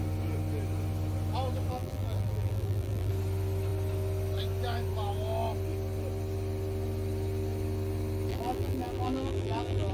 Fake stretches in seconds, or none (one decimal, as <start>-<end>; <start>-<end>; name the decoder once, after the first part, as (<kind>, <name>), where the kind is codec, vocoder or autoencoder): 1.7-3.1 (vocoder, BigVGAN v2); 8.3-9.9